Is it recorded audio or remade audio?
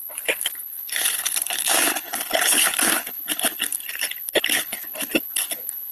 remade